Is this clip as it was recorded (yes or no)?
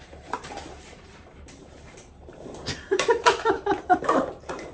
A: no